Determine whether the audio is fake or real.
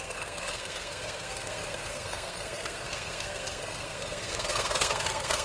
fake